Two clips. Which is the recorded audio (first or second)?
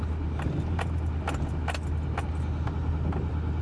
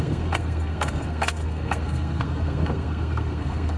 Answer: first